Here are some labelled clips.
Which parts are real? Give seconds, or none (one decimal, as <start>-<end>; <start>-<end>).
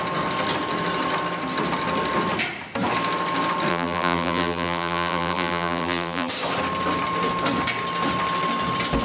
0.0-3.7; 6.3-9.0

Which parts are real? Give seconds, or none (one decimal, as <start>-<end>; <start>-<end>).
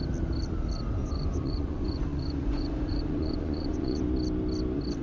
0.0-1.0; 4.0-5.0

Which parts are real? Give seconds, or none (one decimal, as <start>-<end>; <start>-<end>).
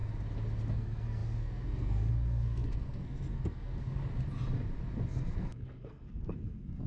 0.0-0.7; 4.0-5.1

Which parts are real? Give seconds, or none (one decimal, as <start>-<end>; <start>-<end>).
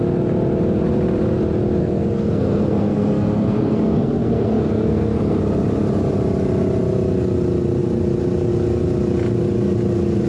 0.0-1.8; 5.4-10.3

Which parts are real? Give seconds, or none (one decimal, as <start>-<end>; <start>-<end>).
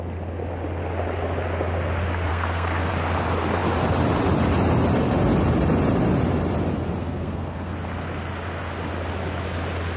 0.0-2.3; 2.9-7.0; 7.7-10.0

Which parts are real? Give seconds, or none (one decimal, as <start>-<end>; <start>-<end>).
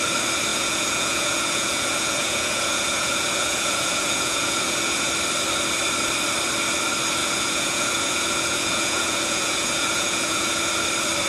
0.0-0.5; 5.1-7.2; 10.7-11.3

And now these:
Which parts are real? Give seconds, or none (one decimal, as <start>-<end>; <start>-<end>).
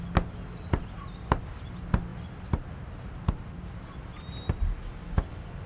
0.0-5.7